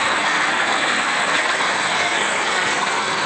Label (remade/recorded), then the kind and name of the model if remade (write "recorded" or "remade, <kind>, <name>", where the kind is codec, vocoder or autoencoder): remade, codec, SNAC